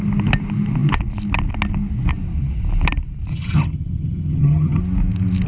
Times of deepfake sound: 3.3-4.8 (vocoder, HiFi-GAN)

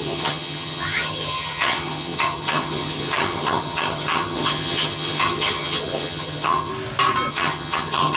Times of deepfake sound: 0.0-6.7 (vocoder, HiFi-GAN); 7.3-8.2

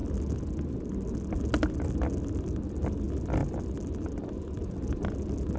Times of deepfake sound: none

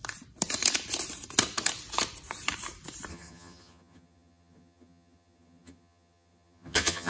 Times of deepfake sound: 3.1-7.1 (vocoder, HiFi-GAN)